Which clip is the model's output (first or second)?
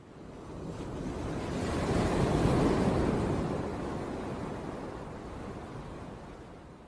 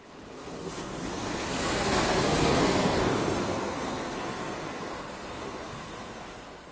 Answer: second